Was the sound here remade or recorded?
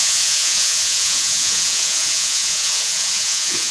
remade